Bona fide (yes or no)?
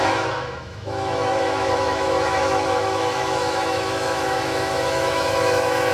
no